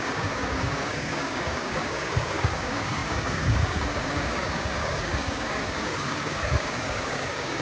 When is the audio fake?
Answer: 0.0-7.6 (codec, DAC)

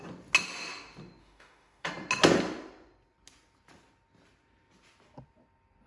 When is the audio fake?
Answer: 1.2-1.9 (autoencoder, DAC-VAE)